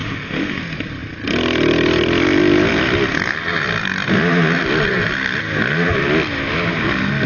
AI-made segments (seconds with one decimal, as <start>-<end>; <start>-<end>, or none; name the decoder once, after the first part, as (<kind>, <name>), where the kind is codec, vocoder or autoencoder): 0.0-0.6 (autoencoder, DAC-VAE)